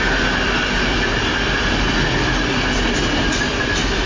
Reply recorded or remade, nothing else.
recorded